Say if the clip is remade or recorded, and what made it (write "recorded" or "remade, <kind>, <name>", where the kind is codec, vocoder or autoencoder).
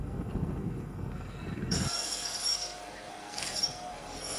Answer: remade, codec, SNAC